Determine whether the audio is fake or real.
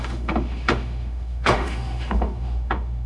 fake